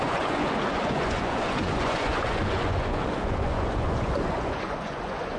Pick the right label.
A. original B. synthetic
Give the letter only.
B